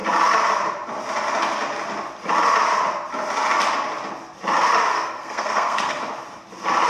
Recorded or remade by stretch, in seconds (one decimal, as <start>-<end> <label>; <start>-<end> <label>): 0.0-4.9 recorded; 4.9-6.0 remade; 6.0-6.9 recorded